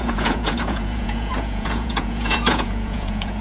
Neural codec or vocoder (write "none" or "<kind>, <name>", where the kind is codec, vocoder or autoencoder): vocoder, Vocos